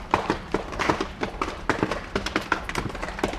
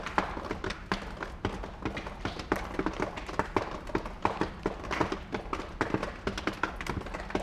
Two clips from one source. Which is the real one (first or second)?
second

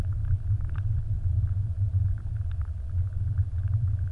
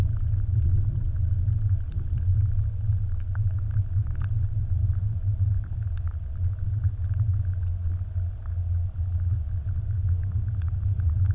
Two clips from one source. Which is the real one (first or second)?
second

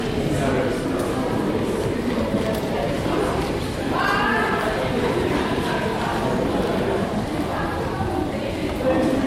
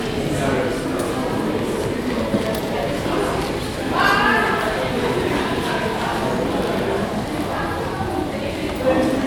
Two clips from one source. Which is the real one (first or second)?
second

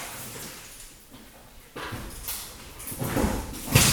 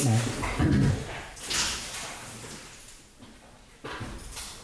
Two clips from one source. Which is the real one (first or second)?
second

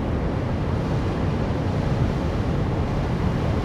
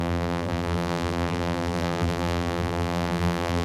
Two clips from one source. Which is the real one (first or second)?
first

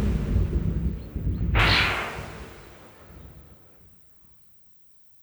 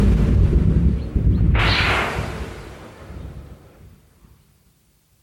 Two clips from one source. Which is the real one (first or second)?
first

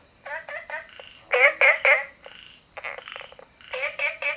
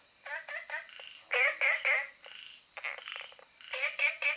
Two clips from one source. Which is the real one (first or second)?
first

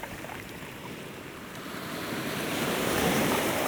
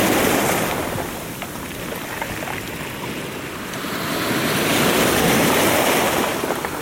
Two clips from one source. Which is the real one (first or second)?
second